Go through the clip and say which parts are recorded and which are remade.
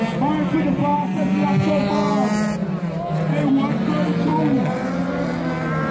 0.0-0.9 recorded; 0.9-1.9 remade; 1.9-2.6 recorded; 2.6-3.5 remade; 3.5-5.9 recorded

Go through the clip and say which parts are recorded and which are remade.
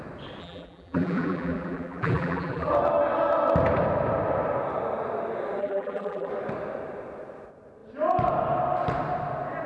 0.0-0.4 recorded; 0.4-2.7 remade; 2.7-5.6 recorded; 5.6-6.3 remade; 6.3-9.7 recorded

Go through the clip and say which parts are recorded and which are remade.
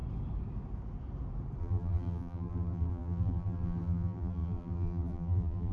0.0-1.6 recorded; 1.6-5.7 remade